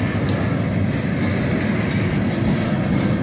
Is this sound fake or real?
real